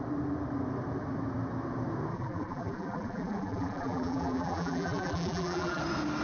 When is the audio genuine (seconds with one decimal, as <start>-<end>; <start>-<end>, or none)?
0.0-2.1; 5.8-6.2